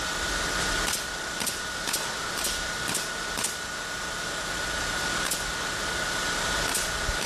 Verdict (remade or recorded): recorded